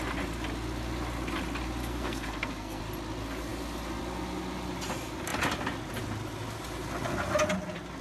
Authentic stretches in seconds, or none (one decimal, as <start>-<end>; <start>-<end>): 0.0-1.8; 2.8-8.0